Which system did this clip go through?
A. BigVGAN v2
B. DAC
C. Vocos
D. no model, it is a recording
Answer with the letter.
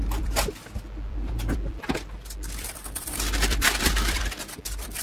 A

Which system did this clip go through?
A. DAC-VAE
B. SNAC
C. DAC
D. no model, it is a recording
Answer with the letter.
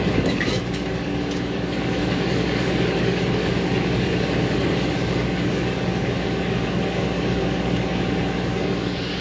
C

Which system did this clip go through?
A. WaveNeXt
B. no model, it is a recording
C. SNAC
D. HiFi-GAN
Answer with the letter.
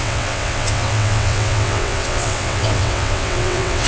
A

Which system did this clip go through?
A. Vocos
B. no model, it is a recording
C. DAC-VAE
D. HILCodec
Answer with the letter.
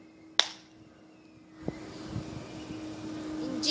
B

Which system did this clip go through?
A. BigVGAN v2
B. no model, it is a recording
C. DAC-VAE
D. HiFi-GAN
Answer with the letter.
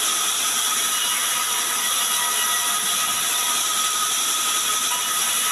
B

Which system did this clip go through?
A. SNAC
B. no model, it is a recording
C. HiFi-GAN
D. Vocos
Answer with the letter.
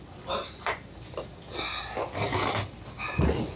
B